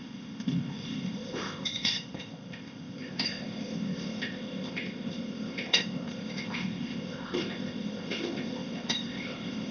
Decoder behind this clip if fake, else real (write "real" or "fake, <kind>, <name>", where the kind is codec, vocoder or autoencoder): fake, codec, ZipCodec